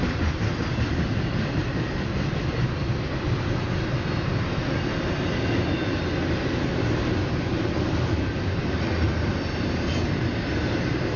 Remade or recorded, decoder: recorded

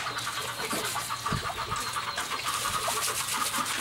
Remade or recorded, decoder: recorded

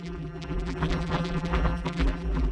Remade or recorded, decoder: remade, vocoder, BigVGAN v2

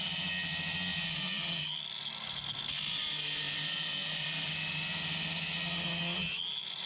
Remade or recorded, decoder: recorded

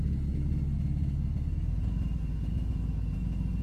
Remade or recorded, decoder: recorded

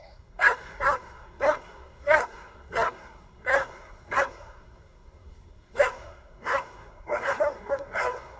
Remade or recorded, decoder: remade, codec, SNAC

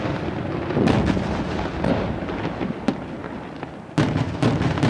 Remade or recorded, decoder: recorded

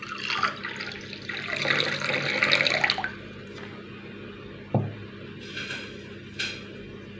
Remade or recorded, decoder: recorded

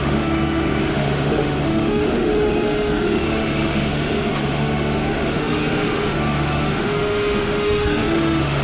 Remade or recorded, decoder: remade, autoencoder, DAC-VAE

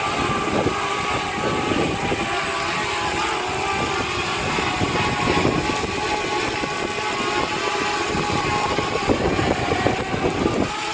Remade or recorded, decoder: recorded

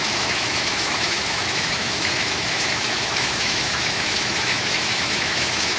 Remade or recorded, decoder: remade, autoencoder, DAC-VAE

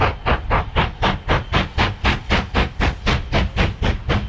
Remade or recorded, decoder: recorded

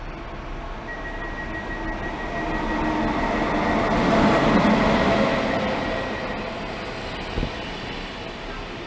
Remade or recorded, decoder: recorded